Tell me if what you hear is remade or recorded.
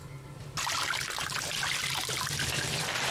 recorded